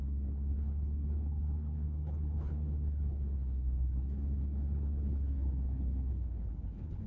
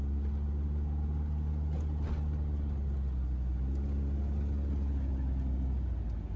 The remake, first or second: first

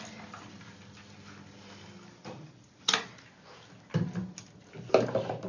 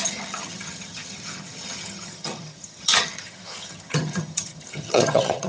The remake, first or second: second